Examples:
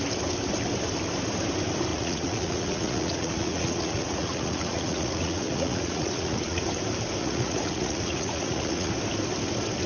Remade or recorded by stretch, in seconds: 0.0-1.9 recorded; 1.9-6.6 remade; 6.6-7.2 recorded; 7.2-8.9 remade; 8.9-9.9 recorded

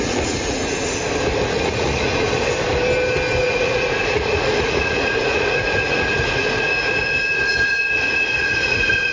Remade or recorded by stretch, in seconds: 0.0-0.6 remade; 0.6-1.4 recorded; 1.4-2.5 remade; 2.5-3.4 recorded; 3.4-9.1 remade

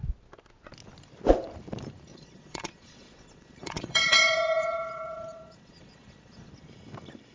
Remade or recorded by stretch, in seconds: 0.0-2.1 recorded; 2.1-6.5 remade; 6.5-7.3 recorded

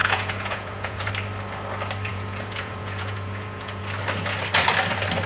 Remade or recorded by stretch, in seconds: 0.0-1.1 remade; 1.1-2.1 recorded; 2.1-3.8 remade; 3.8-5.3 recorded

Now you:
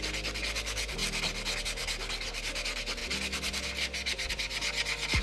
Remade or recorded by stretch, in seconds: 0.0-5.2 recorded

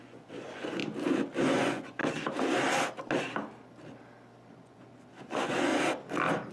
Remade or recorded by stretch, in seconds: 0.0-0.8 remade; 0.8-1.4 recorded; 1.4-2.0 remade; 2.0-4.5 recorded; 4.5-5.7 remade; 5.7-6.5 recorded

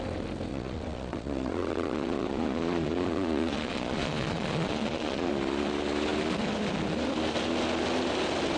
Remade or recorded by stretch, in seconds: 0.0-0.5 recorded; 0.5-5.3 remade; 5.3-8.6 recorded